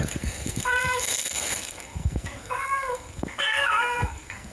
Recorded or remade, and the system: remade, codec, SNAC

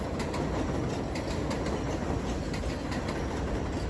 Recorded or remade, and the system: recorded